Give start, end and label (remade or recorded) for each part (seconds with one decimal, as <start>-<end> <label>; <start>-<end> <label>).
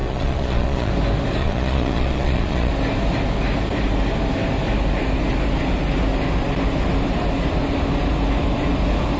0.0-0.9 remade; 0.9-1.4 recorded; 1.4-2.7 remade; 2.7-9.2 recorded